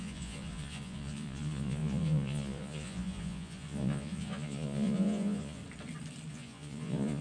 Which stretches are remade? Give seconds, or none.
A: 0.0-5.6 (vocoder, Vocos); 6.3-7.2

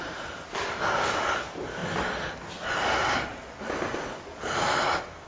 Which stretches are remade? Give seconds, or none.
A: none

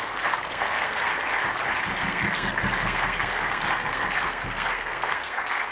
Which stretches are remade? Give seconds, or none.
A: 0.0-1.1 (codec, SNAC); 2.0-5.7